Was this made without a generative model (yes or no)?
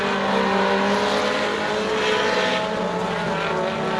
yes